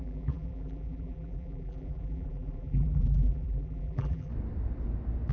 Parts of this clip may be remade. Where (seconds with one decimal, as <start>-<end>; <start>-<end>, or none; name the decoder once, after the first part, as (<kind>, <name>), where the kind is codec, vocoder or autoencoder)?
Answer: 0.0-4.3 (vocoder, BigVGAN v2)